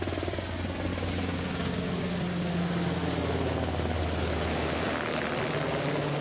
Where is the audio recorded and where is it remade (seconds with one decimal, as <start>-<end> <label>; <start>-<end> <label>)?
0.0-0.9 recorded; 0.9-1.7 remade; 1.7-6.2 recorded